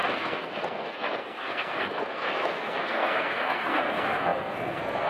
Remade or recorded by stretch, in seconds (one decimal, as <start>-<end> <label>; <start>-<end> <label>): 0.0-5.1 remade